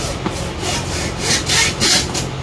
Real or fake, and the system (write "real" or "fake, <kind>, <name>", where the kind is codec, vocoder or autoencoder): real